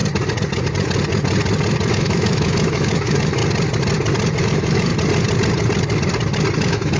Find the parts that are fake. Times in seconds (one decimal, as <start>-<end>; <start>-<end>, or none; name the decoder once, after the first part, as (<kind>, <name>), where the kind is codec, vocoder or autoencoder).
1.9-3.4 (autoencoder, DAC-VAE); 4.4-4.9; 6.6-7.0